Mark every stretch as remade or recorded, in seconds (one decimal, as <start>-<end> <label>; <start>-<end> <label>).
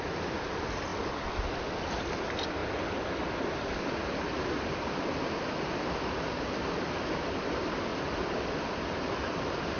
0.0-9.8 recorded